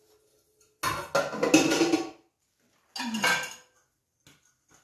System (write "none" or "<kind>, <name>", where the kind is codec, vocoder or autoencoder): none